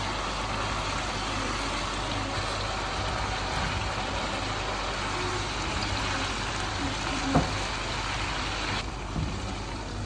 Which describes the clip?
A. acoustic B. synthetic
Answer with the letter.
A